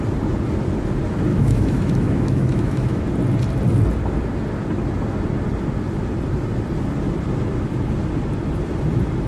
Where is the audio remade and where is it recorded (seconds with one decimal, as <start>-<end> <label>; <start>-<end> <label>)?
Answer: 0.0-1.3 recorded; 1.3-3.0 remade; 3.0-9.3 recorded